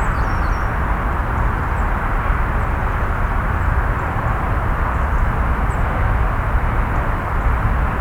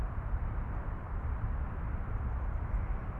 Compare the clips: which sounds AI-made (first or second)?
second